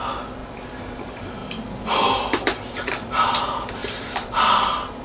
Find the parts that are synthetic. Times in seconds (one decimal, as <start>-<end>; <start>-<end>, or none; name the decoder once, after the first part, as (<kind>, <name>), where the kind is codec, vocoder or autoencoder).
1.4-2.9 (vocoder, BigVGAN v2); 3.8-5.0